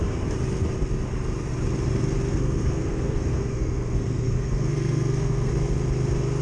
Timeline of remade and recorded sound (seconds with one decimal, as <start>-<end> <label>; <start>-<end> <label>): 0.0-2.3 recorded; 2.3-5.5 remade; 5.5-6.4 recorded